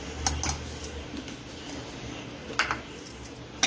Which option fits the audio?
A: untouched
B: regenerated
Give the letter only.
A